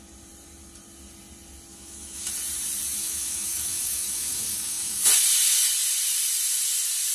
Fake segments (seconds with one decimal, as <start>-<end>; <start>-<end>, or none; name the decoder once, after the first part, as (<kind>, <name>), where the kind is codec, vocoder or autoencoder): 1.7-2.3 (autoencoder, DAC-VAE); 3.0-5.0